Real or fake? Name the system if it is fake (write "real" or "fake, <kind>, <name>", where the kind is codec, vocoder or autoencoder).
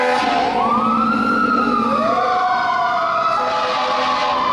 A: real